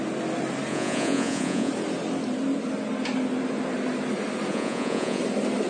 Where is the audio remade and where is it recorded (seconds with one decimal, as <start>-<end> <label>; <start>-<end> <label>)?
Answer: 0.0-0.7 recorded; 0.7-1.7 remade; 1.7-4.5 recorded; 4.5-5.2 remade; 5.2-5.7 recorded

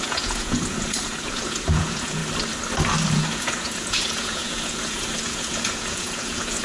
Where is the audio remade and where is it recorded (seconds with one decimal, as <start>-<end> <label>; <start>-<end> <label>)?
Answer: 0.0-2.2 remade; 2.2-3.1 recorded; 3.1-6.6 remade

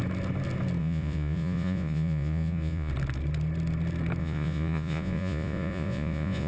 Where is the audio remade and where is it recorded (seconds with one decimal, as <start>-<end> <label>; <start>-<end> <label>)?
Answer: 0.0-0.8 recorded; 0.8-2.9 remade; 2.9-4.2 recorded; 4.2-6.5 remade

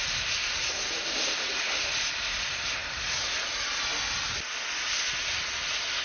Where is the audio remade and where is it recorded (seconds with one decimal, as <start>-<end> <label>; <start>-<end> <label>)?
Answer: 0.0-6.0 recorded

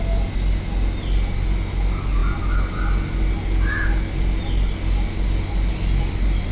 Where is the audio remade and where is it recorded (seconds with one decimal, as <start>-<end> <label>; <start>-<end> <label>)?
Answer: 0.0-6.5 recorded